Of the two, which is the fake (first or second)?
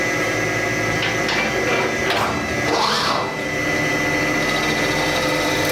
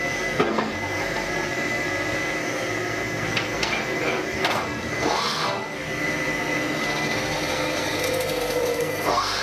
second